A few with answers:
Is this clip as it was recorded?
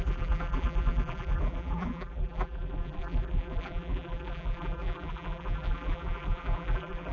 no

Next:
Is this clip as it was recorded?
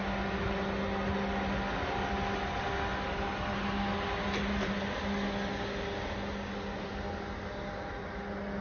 yes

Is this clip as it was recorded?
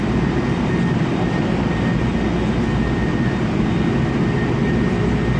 yes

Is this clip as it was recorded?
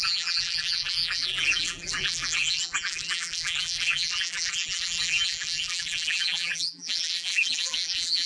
no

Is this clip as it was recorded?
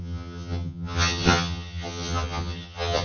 no